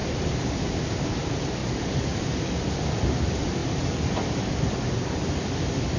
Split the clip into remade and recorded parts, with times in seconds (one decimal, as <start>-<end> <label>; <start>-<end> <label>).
0.0-1.1 recorded; 1.1-1.6 remade; 1.6-2.2 recorded; 2.2-6.0 remade